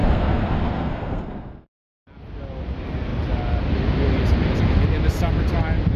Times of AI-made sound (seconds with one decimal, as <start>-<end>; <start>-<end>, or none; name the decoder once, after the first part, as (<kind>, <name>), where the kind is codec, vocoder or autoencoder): 0.0-1.9 (codec, SNAC)

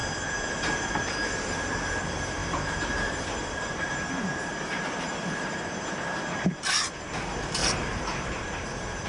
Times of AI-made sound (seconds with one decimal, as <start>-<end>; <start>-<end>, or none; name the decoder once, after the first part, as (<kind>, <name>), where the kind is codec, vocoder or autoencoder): 0.9-9.1 (vocoder, BigVGAN v2)